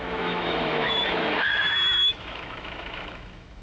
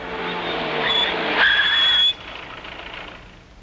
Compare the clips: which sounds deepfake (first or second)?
first